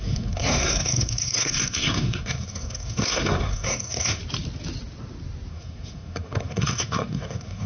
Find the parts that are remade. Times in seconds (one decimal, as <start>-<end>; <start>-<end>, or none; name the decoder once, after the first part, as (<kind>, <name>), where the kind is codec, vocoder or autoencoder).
0.0-4.2 (codec, SNAC); 5.5-7.7

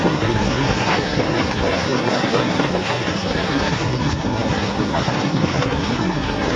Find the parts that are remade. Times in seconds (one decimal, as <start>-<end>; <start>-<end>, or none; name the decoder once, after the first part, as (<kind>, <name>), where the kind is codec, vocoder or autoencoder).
0.0-6.6 (codec, SNAC)

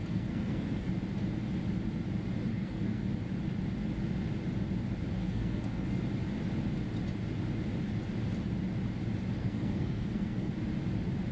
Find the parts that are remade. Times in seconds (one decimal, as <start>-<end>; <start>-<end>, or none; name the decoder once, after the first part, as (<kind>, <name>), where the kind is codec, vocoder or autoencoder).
0.0-0.9 (codec, SNAC); 2.5-3.1; 5.2-6.0; 9.4-10.5

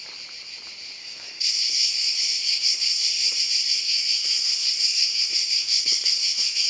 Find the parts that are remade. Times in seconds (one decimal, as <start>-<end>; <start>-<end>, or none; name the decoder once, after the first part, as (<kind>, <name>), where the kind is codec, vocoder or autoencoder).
1.0-3.4 (codec, SNAC); 3.8-6.7